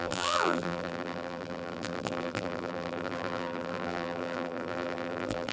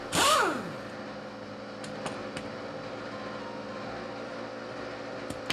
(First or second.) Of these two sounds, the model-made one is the first